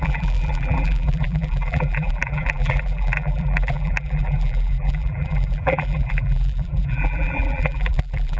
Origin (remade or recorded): remade